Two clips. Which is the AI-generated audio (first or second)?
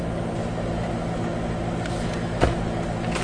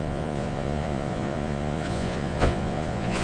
second